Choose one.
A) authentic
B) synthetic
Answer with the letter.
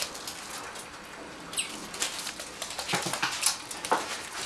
A